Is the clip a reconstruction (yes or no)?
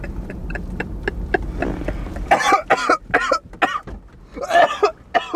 no